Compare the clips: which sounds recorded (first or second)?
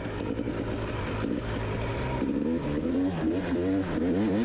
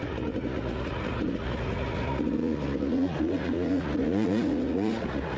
first